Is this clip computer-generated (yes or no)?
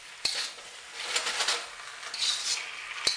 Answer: no